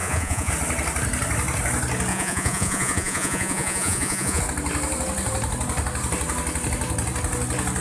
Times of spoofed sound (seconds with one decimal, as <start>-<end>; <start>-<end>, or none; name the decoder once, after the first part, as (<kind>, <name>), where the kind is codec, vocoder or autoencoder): 0.0-0.5 (vocoder, Vocos); 2.1-4.4

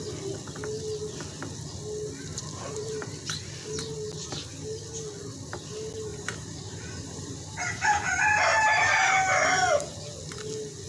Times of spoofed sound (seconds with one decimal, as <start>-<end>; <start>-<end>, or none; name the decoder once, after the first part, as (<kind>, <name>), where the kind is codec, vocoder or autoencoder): 2.3-3.1 (vocoder, BigVGAN v2); 6.1-9.0

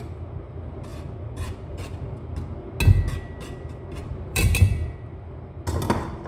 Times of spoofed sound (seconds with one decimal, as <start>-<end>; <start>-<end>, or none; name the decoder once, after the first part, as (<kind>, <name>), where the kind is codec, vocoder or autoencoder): 0.9-2.1 (vocoder, BigVGAN v2); 4.0-5.4

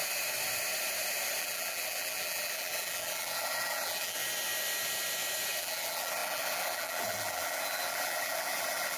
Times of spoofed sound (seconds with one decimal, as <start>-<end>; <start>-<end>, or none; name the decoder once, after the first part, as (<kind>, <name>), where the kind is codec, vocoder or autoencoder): 1.4-4.2 (vocoder, BigVGAN v2); 5.6-9.0